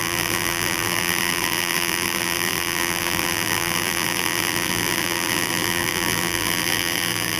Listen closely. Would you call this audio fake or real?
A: fake